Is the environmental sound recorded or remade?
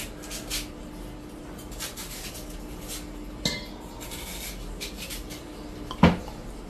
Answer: recorded